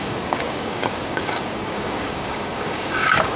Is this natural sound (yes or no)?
no